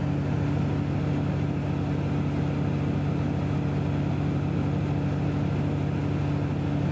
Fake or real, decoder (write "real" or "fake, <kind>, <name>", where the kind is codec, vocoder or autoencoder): real